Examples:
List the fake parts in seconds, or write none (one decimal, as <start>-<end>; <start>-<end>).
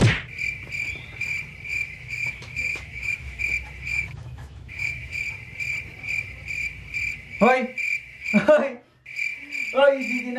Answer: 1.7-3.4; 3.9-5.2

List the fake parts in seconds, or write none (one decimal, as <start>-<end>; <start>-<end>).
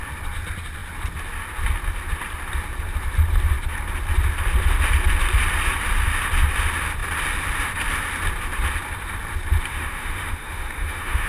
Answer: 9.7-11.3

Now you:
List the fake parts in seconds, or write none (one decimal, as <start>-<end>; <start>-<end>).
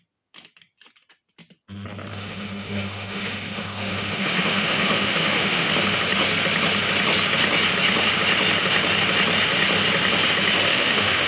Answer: 2.1-5.7; 10.7-11.3